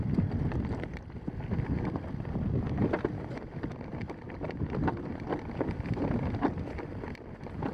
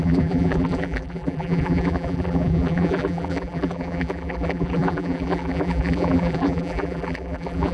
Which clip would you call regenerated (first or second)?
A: second